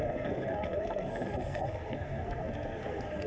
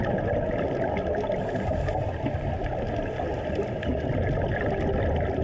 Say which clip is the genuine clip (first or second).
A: second